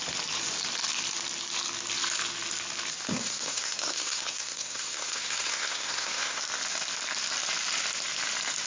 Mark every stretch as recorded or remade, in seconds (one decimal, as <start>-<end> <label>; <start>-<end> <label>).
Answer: 0.0-3.1 recorded; 3.1-6.4 remade; 6.4-8.7 recorded

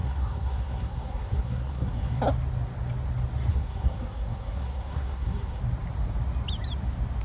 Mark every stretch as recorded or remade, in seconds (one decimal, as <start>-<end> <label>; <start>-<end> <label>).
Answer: 0.0-2.2 remade; 2.2-3.5 recorded; 3.5-5.6 remade; 5.6-7.2 recorded

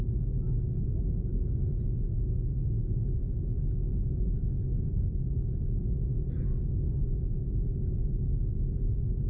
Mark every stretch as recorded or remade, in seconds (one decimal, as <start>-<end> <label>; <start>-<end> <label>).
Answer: 0.0-1.3 recorded; 1.3-1.8 remade; 1.8-9.3 recorded

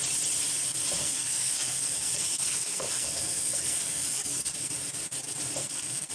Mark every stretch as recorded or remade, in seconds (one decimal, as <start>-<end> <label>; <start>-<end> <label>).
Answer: 0.0-1.0 recorded; 1.0-4.7 remade; 4.7-5.6 recorded; 5.6-6.1 remade

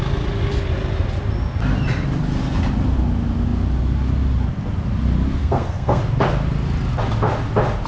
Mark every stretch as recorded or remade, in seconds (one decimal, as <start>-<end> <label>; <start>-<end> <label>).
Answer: 0.0-5.4 recorded; 5.4-6.0 remade; 6.0-7.9 recorded